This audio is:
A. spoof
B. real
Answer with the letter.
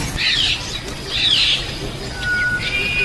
B